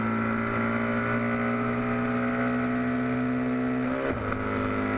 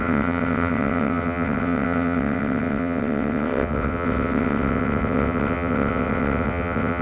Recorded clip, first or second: first